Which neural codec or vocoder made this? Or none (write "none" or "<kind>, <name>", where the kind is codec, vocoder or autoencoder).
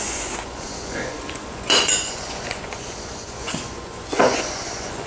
vocoder, Vocos